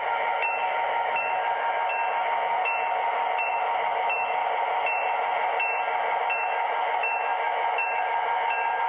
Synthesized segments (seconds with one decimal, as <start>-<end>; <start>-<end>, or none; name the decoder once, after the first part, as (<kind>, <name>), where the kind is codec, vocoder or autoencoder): 0.0-2.6 (autoencoder, DAC-VAE); 3.5-4.4; 6.2-8.9